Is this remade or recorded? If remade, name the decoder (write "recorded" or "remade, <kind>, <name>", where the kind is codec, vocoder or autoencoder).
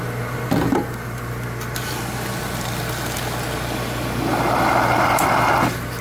recorded